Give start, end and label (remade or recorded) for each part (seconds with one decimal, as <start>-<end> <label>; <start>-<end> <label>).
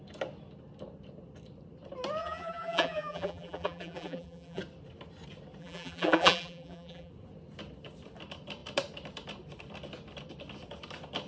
0.0-2.2 recorded; 2.2-4.6 remade; 4.6-5.6 recorded; 5.6-7.1 remade; 7.1-11.3 recorded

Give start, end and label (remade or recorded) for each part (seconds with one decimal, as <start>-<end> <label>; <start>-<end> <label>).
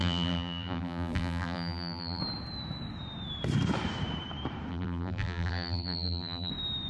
0.0-2.2 remade; 2.2-4.7 recorded; 4.7-6.5 remade; 6.5-6.9 recorded